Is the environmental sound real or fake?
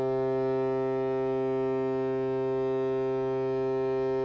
real